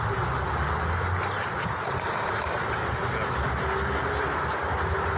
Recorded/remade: recorded